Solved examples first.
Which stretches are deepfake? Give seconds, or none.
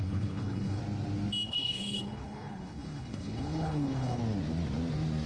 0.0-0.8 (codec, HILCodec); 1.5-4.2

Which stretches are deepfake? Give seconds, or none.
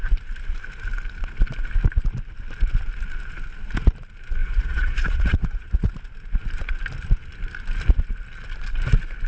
4.4-5.9 (vocoder, Vocos)